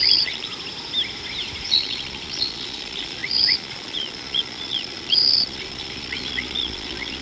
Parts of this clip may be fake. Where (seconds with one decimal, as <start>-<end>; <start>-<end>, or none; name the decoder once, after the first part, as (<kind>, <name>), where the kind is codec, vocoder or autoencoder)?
0.0-0.5 (vocoder, Vocos); 1.7-7.2